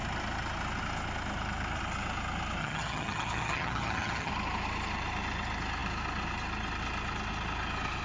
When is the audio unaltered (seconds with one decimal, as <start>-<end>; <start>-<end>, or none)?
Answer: 0.0-2.6; 4.3-8.0